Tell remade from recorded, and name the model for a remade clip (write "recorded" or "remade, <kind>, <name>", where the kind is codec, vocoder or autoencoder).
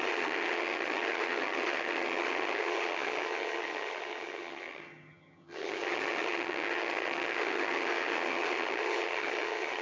remade, vocoder, HiFi-GAN